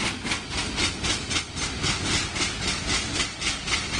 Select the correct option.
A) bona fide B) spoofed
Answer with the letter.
A